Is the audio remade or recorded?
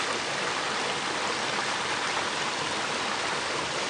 recorded